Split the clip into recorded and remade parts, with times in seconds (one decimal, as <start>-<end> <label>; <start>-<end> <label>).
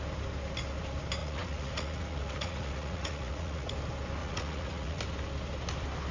0.0-1.2 recorded; 1.2-3.7 remade; 3.7-4.2 recorded; 4.2-5.0 remade; 5.0-6.1 recorded